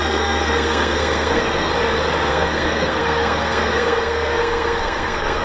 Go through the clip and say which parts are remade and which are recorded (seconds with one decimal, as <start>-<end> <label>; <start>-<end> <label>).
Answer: 0.0-1.7 remade; 1.7-2.3 recorded; 2.3-5.4 remade